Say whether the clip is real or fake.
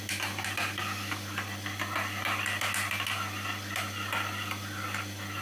real